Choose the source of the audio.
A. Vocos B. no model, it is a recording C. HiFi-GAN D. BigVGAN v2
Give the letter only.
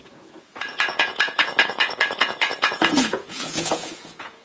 A